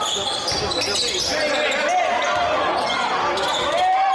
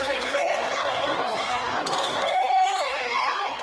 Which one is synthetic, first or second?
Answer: second